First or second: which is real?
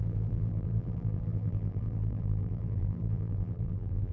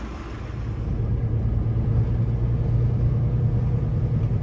second